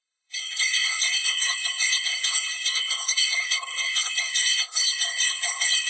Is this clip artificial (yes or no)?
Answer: yes